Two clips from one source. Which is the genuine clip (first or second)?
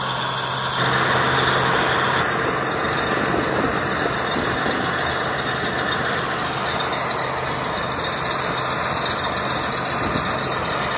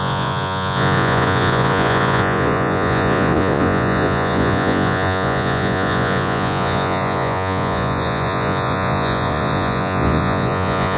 first